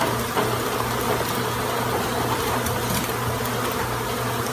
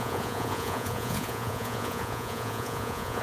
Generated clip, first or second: second